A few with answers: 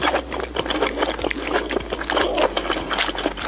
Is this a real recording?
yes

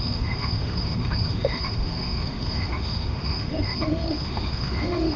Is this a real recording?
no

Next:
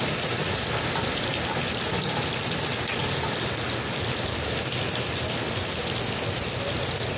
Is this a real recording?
yes